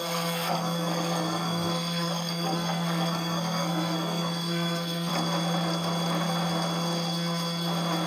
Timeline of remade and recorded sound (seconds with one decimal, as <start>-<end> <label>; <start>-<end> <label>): 0.0-5.1 remade; 5.1-8.1 recorded